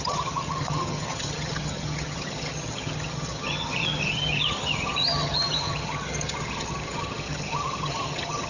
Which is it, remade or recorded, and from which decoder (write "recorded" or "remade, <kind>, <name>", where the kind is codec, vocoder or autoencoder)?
remade, vocoder, HiFi-GAN